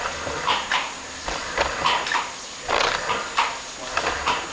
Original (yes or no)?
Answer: yes